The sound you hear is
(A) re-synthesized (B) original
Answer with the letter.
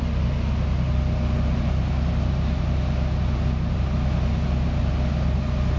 B